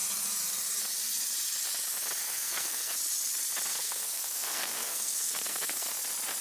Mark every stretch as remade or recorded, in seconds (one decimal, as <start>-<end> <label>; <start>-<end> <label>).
0.0-2.2 recorded; 2.2-3.0 remade; 3.0-3.7 recorded; 3.7-5.9 remade; 5.9-6.4 recorded